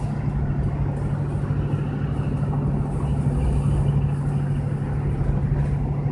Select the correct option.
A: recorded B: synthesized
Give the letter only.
A